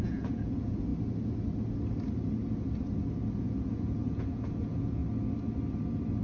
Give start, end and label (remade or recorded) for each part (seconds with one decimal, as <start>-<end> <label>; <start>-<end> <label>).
0.0-0.9 remade; 0.9-3.4 recorded; 3.4-5.0 remade; 5.0-6.2 recorded